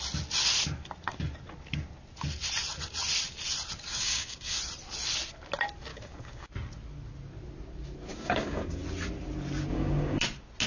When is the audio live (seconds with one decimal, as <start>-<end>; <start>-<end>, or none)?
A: 0.0-3.9; 4.6-5.9; 6.5-8.1; 8.8-9.7; 10.2-10.7

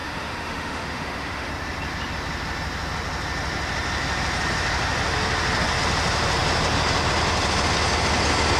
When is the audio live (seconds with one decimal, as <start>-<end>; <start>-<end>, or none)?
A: 1.5-8.6

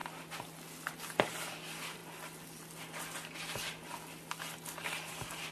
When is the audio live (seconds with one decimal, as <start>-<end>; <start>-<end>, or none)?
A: 0.0-5.5

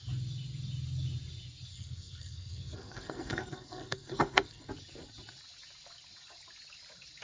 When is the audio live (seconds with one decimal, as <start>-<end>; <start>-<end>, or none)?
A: 0.0-1.7; 4.7-7.2

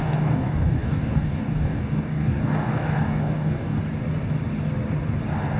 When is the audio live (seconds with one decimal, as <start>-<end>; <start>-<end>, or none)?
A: 3.8-5.6